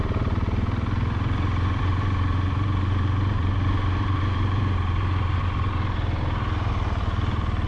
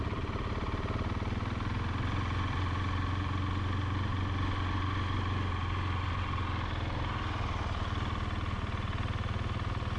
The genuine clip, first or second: second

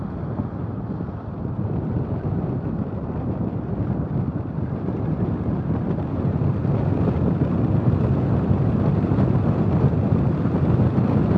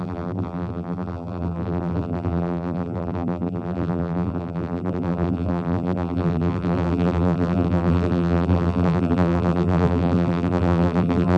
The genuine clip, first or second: first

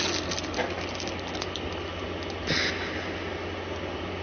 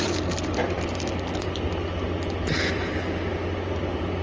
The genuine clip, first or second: first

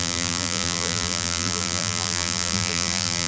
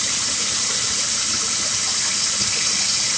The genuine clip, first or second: second